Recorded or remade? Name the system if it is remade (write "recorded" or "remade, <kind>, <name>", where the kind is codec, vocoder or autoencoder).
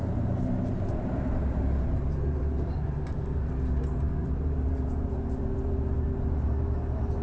remade, vocoder, BigVGAN v2